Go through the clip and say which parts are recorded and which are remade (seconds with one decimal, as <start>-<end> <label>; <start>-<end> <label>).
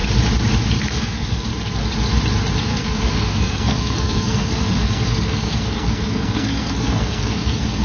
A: 0.0-1.0 recorded; 1.0-1.5 remade; 1.5-2.6 recorded; 2.6-7.8 remade